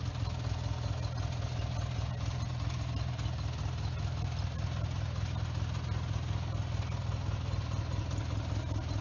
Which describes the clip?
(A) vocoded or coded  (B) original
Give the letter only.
B